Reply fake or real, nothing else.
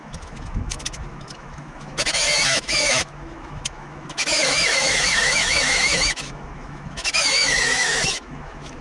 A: fake